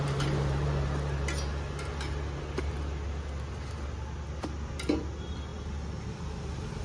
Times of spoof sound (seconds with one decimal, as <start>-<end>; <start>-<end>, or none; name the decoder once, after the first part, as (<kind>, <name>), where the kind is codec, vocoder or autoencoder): none